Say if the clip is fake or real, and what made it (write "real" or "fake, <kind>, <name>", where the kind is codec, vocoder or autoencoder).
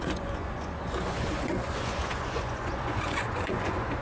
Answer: fake, vocoder, Vocos